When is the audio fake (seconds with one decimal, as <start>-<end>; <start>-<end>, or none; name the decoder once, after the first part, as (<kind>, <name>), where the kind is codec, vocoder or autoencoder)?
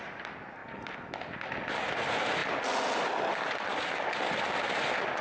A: none